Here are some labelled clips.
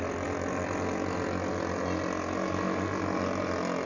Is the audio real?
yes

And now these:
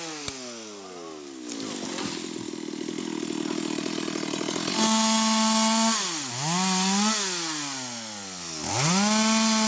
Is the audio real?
yes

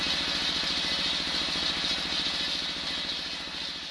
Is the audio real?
yes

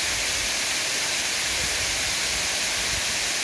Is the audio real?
yes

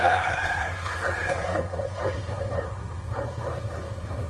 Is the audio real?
no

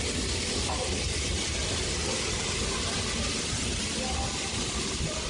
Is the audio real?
yes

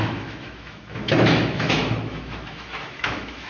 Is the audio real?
no